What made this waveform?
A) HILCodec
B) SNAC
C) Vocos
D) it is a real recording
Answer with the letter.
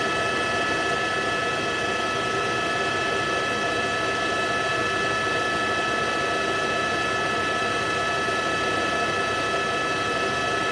D